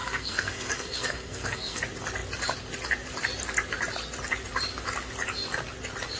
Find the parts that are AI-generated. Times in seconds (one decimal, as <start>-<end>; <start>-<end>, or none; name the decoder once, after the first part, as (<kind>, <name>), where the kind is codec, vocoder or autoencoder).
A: 0.0-1.8 (codec, SNAC)

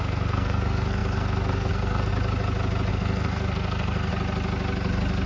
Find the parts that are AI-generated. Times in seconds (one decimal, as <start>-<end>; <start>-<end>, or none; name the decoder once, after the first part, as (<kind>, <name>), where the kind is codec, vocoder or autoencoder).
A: 0.0-2.1 (codec, SNAC); 2.9-4.1

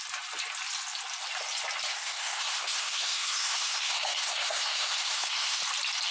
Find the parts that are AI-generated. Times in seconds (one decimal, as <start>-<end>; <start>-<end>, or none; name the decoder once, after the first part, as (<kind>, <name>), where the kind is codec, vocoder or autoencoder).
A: 1.9-5.6 (codec, SNAC)